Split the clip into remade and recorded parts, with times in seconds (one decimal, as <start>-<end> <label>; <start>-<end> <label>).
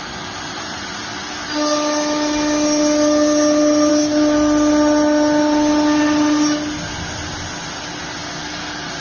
0.0-9.0 recorded